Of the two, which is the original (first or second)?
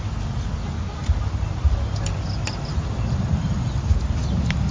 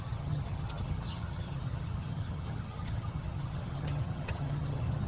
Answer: first